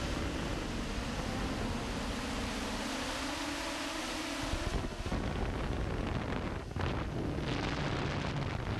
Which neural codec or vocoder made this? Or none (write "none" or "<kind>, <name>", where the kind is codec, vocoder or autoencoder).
none